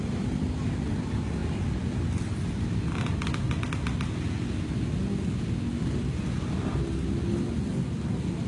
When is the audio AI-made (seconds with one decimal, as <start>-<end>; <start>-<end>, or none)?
none

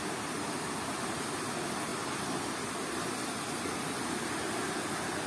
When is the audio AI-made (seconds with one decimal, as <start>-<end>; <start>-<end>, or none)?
none

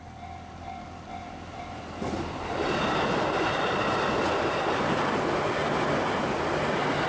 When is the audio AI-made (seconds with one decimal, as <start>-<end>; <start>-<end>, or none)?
none